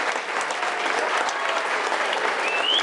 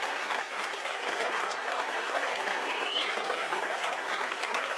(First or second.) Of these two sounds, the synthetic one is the second